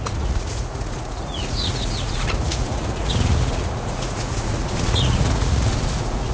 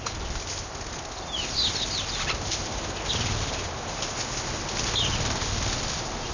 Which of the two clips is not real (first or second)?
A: first